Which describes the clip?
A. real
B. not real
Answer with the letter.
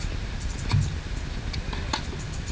A